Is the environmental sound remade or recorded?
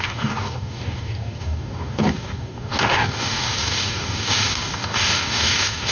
remade